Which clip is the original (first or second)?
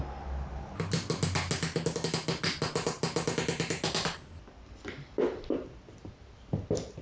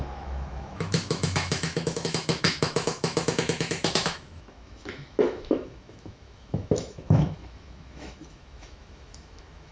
first